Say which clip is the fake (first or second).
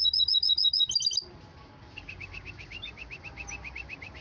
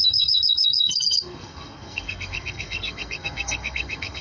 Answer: second